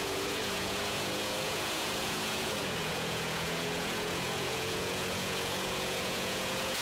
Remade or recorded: remade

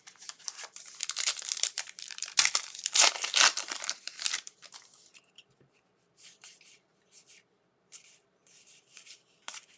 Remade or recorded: remade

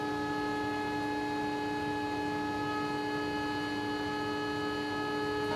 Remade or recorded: recorded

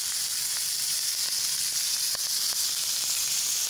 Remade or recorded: recorded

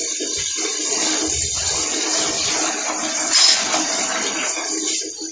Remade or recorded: recorded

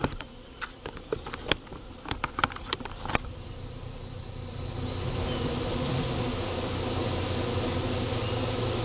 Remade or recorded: recorded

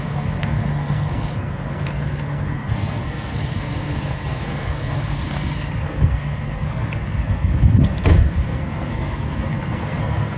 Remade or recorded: remade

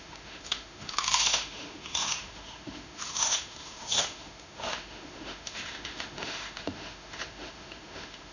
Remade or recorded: remade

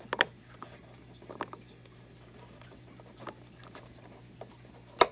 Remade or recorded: recorded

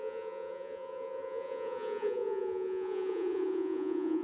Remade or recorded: remade